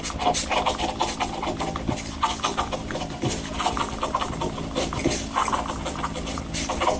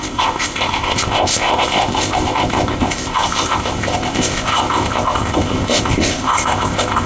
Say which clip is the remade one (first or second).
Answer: second